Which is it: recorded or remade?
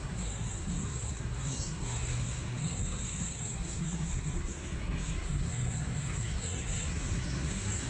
remade